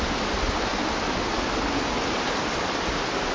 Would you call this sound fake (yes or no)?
no